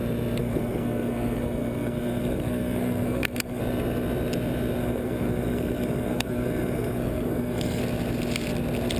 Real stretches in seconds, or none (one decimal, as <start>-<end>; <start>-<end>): 0.0-0.4; 3.6-4.8; 7.8-9.0